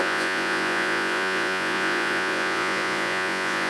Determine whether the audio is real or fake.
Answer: fake